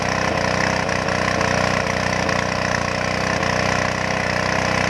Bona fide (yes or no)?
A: yes